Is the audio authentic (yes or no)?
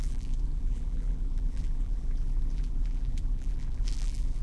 no